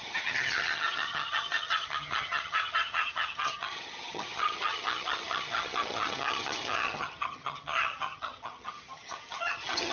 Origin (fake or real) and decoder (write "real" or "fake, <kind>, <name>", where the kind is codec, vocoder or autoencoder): fake, vocoder, HiFi-GAN